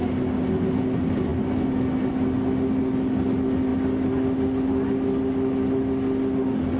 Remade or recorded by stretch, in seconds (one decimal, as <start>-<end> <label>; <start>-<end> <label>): 0.0-6.8 recorded